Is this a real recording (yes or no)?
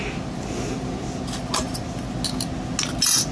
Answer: yes